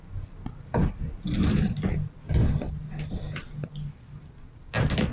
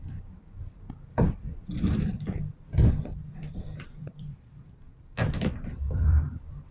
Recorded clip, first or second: first